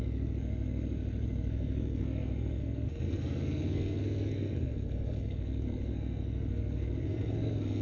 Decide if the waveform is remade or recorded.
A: remade